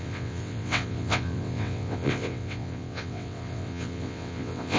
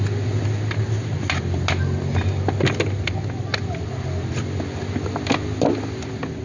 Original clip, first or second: second